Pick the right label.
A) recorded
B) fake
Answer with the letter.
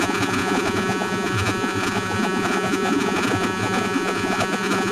B